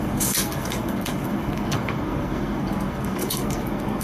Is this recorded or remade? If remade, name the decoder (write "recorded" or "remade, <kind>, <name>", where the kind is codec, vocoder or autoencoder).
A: remade, codec, SNAC